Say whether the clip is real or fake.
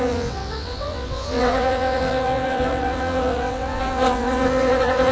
fake